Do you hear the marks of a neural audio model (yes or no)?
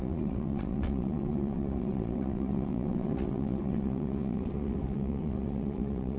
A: yes